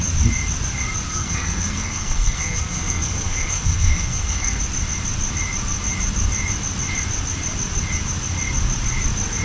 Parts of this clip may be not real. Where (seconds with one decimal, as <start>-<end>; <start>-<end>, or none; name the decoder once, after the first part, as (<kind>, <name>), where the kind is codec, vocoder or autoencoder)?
1.1-4.6 (codec, SNAC)